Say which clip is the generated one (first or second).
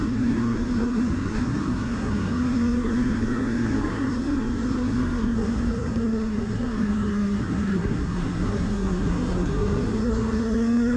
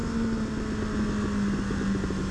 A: first